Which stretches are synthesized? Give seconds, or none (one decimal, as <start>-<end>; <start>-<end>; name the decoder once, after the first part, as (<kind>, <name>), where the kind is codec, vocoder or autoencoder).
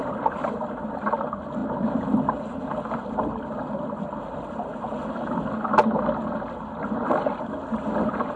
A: none